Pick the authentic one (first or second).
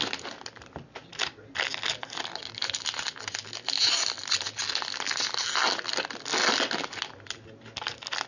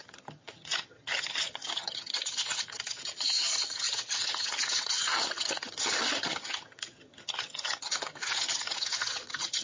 first